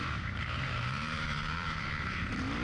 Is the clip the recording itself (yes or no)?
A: no